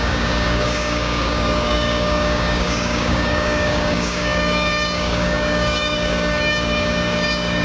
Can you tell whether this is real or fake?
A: fake